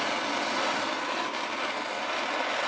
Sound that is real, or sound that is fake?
real